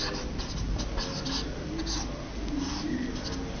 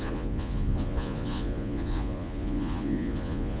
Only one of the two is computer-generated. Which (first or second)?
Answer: second